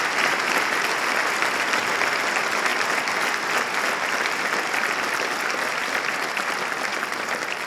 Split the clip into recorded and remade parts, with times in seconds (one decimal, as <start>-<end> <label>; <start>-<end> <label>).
0.0-7.7 recorded